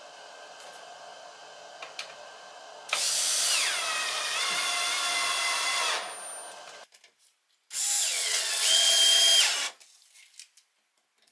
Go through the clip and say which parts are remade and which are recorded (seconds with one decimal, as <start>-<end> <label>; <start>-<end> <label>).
0.0-8.1 recorded; 8.1-8.9 remade; 8.9-11.3 recorded